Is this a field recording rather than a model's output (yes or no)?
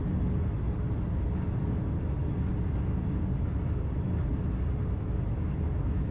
yes